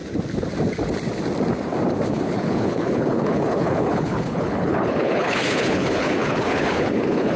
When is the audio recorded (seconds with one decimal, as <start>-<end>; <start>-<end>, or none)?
0.0-2.1